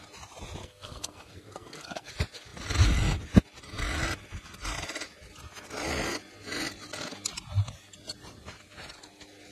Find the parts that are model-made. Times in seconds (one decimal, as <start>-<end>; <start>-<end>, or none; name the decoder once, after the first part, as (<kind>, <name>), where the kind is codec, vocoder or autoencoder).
0.6-2.1 (codec, SNAC)